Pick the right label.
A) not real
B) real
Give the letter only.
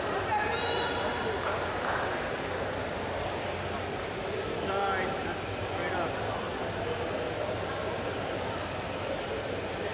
B